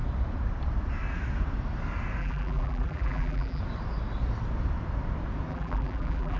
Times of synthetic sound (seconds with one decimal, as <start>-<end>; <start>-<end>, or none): 2.2-3.6; 5.5-6.4